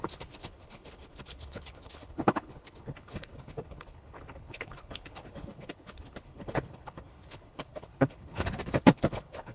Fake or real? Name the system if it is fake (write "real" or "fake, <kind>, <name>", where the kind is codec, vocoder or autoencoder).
fake, codec, HILCodec